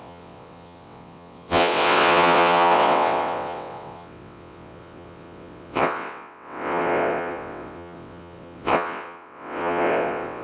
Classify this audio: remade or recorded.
remade